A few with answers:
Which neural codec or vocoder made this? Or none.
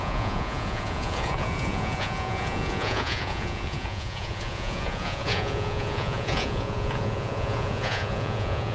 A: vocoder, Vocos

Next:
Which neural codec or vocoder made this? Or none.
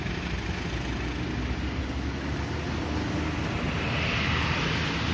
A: none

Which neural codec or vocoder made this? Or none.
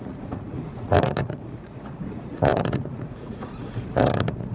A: vocoder, Vocos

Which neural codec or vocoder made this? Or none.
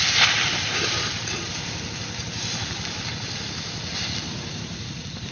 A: none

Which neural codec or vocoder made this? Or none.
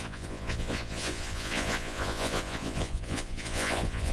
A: vocoder, Vocos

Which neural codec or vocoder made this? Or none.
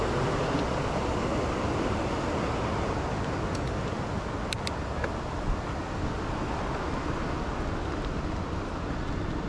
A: none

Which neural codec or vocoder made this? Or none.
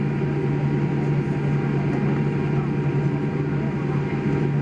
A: none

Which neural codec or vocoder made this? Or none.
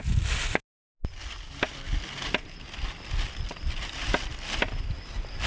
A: none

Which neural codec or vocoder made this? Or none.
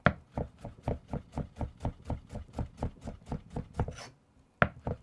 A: none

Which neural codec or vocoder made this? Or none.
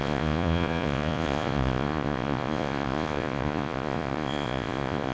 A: vocoder, Vocos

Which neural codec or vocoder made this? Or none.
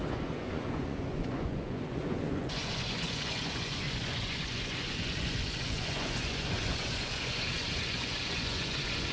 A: vocoder, Vocos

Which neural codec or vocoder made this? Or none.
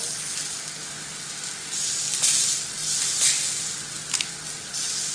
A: none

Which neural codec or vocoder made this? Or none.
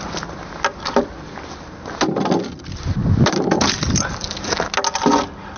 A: none